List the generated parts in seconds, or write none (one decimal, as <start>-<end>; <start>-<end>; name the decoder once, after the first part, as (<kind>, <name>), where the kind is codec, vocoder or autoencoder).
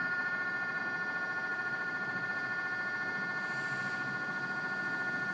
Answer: 0.0-0.8 (vocoder, BigVGAN v2); 1.5-2.3